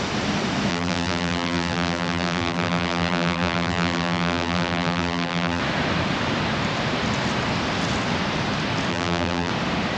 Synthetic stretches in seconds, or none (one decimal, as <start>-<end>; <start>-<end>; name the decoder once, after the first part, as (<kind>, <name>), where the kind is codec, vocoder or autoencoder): 0.7-5.6 (vocoder, BigVGAN v2); 8.9-9.5